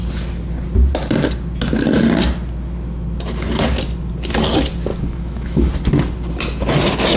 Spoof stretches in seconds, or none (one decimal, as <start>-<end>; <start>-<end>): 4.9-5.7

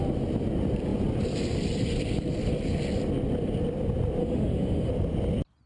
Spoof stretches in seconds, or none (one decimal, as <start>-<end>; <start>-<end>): 4.2-4.9

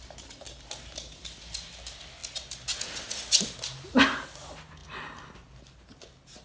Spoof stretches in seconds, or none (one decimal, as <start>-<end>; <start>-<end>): none

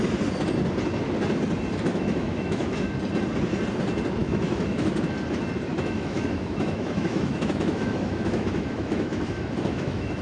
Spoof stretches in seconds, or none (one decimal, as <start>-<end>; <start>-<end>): 1.9-2.9; 4.2-4.9; 5.7-10.2